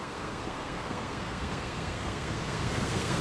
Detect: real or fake fake